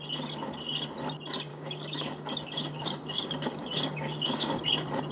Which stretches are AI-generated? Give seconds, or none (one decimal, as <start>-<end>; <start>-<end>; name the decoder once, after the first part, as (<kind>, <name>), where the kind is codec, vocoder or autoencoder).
1.5-4.6 (codec, DAC)